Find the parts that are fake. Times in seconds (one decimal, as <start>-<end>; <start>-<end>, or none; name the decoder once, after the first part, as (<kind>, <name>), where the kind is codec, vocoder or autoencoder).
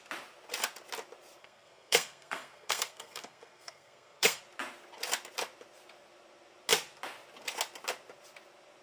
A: 1.4-4.4 (codec, SNAC)